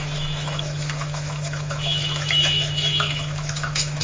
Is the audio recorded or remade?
remade